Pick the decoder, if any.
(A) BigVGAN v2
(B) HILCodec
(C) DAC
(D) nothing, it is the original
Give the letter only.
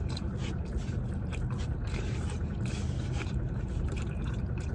A